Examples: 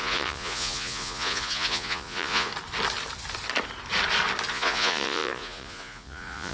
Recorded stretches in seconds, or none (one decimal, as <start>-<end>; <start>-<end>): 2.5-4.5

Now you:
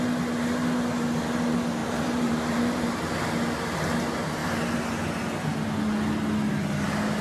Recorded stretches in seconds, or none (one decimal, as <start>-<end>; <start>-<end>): 0.0-1.8; 3.1-7.2

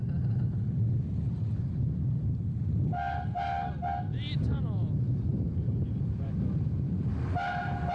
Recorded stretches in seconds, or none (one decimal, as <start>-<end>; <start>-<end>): 0.0-5.3; 7.2-7.9

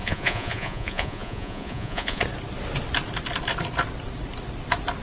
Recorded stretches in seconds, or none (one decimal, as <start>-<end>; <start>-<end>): 2.2-5.0